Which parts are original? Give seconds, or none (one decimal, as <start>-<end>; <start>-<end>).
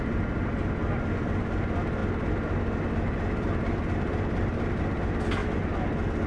0.0-6.3